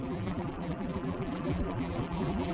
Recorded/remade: remade